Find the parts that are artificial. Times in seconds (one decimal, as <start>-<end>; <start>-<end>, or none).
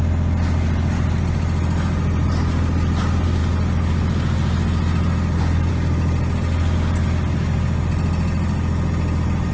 none